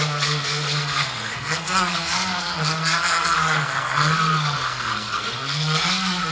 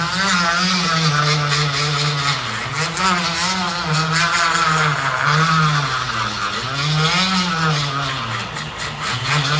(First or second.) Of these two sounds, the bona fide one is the second